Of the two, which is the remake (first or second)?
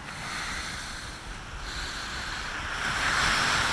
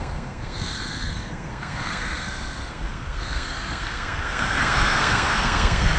second